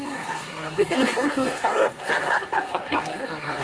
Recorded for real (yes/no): no